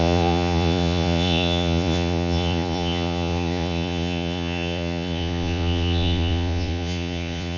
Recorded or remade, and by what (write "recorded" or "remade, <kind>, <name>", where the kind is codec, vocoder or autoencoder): remade, vocoder, Vocos